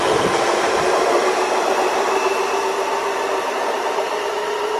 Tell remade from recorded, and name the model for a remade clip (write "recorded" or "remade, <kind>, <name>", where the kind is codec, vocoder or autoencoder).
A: remade, vocoder, BigVGAN v2